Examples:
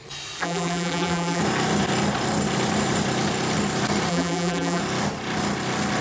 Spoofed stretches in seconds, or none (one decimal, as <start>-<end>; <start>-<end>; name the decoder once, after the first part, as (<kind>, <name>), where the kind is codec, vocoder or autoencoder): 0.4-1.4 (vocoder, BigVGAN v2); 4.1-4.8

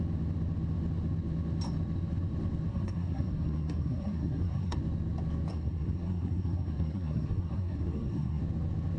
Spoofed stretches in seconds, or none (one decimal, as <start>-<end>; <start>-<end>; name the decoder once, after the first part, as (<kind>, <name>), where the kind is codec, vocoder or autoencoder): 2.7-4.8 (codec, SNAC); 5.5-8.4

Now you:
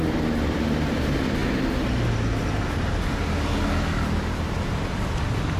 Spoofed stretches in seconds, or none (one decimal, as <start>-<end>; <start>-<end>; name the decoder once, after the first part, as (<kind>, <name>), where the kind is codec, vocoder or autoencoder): none

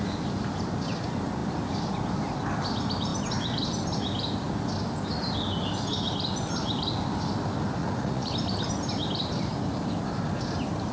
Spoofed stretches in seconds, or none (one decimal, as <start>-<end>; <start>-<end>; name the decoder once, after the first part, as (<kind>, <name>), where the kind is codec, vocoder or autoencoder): 7.8-8.3 (vocoder, Vocos)

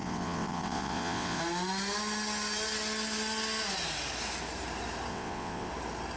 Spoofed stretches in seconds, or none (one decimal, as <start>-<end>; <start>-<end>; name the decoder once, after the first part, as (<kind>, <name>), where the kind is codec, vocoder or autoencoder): 0.0-1.4 (vocoder, WaveNeXt); 5.1-5.7